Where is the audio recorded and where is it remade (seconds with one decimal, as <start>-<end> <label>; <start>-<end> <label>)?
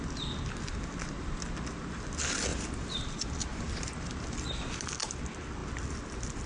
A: 0.0-2.5 recorded; 2.5-3.0 remade; 3.0-3.5 recorded; 3.5-4.1 remade; 4.1-6.5 recorded